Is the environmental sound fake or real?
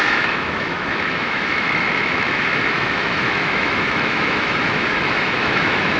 fake